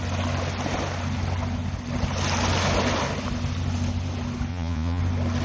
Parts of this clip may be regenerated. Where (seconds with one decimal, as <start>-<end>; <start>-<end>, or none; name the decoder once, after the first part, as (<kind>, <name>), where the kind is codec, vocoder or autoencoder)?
4.5-5.0 (vocoder, Vocos)